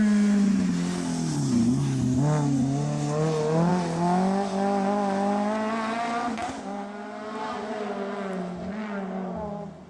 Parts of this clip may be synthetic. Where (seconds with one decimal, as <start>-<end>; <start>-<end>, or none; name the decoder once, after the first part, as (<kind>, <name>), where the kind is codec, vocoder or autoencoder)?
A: none